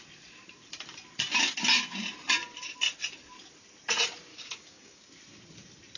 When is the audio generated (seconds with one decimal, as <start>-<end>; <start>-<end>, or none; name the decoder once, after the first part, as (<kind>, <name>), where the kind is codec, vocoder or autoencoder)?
4.3-5.1 (codec, DAC)